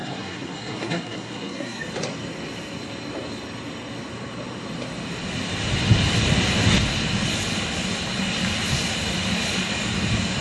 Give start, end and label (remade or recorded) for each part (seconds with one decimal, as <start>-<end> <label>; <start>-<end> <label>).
0.0-1.8 remade; 1.8-10.4 recorded